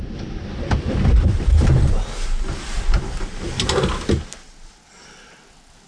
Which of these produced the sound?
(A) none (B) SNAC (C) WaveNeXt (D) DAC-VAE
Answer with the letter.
A